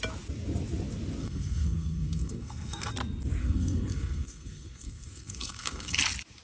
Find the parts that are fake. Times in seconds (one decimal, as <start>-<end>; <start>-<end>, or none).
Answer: 1.2-2.9; 3.4-6.0